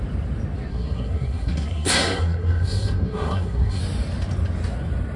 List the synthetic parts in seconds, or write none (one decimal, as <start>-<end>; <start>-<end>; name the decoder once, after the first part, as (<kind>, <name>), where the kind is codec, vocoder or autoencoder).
0.7-3.8 (codec, SNAC)